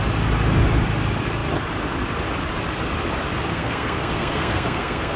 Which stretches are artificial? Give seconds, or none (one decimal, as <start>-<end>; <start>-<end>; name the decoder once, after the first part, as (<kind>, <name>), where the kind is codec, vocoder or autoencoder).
3.5-5.2 (codec, SNAC)